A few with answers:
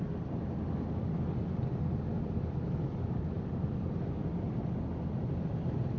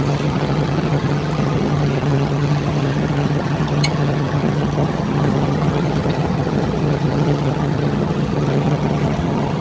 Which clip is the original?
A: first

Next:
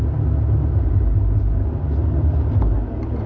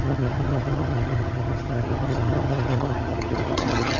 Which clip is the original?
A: first